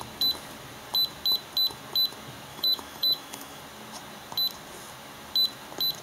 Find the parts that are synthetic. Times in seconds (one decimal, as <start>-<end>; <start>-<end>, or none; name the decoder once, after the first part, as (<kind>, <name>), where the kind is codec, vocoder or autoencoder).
2.5-3.6 (autoencoder, DAC-VAE)